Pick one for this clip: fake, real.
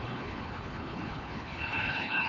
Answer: fake